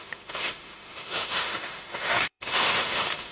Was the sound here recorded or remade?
remade